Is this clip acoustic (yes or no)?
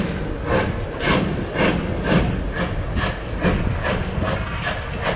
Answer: yes